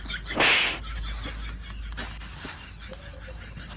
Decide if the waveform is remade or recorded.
recorded